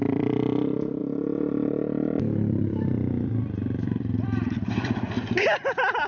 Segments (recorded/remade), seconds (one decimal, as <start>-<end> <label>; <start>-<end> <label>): 0.0-6.1 remade